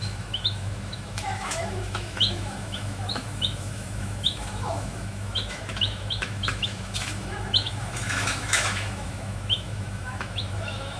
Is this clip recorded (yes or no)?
no